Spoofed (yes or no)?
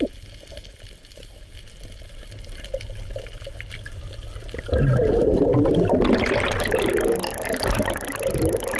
no